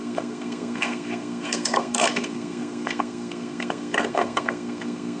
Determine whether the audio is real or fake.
fake